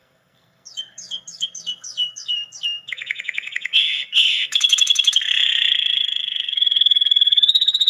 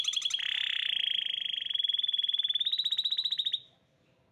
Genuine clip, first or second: second